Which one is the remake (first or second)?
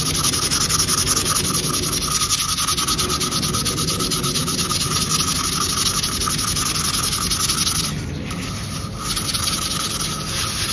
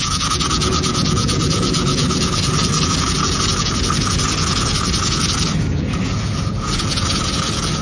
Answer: second